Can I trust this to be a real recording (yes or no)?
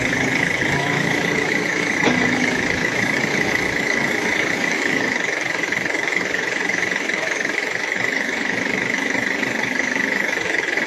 no